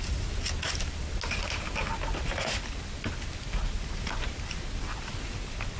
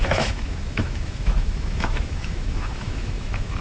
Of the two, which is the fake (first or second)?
second